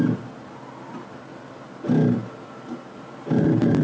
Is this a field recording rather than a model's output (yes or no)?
yes